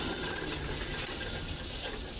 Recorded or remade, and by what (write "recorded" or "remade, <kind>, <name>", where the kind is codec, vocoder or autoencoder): recorded